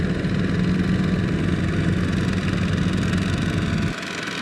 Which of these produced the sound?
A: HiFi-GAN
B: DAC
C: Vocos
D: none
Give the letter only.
D